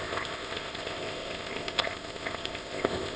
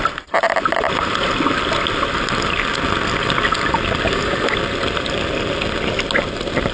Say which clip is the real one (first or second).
second